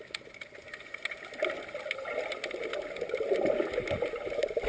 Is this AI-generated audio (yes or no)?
no